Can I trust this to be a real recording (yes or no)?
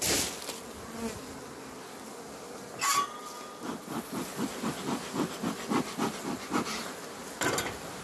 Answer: yes